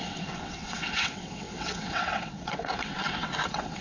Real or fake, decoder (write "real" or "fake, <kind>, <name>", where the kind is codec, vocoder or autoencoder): fake, vocoder, WaveNeXt